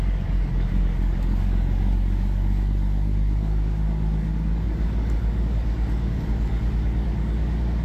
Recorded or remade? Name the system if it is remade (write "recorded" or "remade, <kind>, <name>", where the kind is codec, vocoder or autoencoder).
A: remade, codec, DAC